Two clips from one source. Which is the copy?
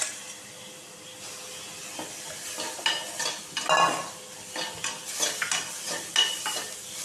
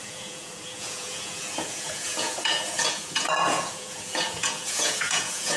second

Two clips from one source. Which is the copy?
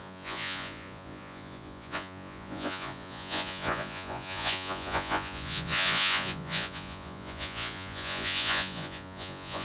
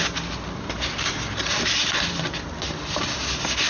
first